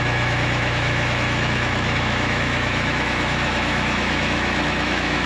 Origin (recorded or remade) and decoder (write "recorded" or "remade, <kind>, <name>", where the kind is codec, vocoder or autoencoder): remade, autoencoder, DAC-VAE